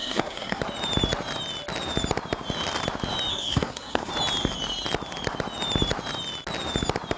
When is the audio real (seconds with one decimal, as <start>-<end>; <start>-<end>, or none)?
0.6-3.3; 4.1-7.2